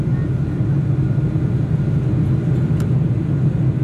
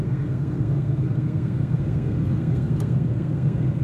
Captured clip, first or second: first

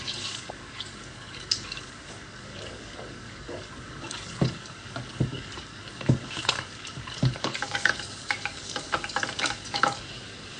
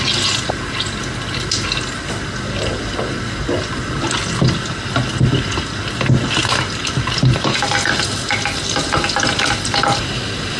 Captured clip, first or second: second